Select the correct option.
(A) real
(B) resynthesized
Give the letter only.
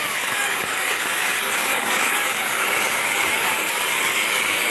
B